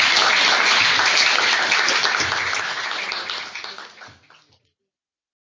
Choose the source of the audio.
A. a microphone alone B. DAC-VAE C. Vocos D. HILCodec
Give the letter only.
A